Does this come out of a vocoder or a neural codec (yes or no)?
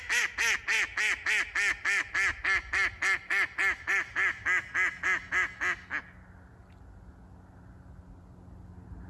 no